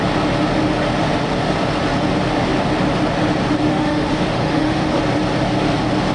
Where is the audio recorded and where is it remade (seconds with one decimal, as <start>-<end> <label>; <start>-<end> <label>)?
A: 0.0-3.7 recorded; 3.7-5.0 remade; 5.0-6.1 recorded